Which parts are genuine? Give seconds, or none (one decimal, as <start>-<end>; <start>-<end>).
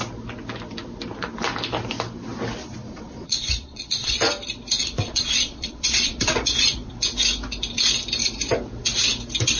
0.0-2.6; 4.1-4.8; 6.9-9.6